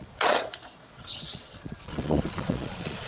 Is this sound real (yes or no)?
no